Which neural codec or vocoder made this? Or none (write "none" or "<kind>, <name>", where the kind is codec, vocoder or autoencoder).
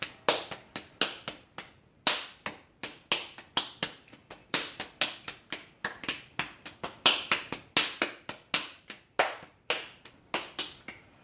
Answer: none